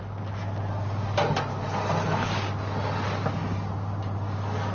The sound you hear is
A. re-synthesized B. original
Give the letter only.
B